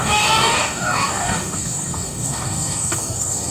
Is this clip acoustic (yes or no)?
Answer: no